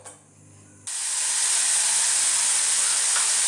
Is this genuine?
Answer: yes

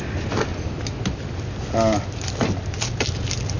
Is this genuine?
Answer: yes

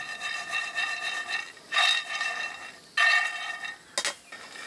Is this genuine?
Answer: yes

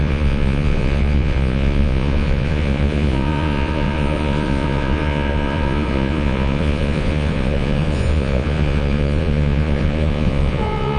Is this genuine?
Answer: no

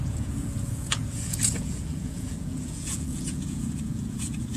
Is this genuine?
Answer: no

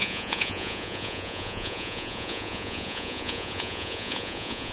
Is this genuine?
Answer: no